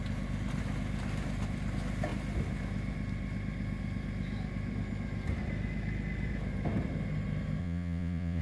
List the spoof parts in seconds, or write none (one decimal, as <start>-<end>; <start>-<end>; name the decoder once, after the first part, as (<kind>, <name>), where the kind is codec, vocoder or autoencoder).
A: 7.6-8.4 (vocoder, Vocos)